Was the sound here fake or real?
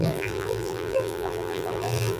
fake